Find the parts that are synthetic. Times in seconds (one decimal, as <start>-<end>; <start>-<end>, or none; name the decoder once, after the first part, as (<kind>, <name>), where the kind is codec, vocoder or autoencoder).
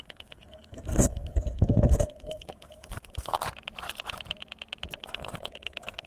0.0-3.4 (codec, SNAC); 5.0-6.1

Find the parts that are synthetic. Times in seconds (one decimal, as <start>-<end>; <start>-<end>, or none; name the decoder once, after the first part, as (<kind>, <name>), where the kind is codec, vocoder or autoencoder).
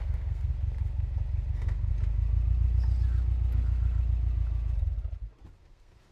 0.0-0.5 (codec, SNAC); 1.5-1.9; 5.6-6.1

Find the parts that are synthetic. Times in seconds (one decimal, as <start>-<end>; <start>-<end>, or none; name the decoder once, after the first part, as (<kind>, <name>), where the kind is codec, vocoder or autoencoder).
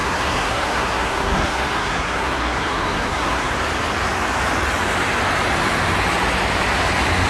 0.0-3.5 (codec, SNAC)